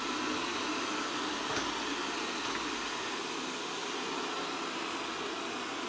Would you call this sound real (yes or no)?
yes